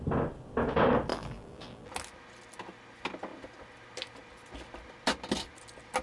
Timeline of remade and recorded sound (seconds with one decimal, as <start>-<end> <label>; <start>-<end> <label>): 0.0-1.1 recorded; 1.1-1.9 remade; 1.9-6.0 recorded